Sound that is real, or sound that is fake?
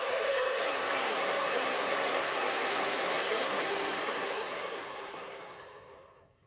fake